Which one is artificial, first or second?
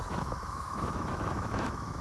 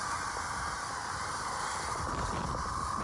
first